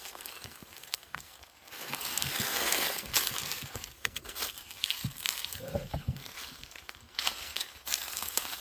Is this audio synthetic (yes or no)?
yes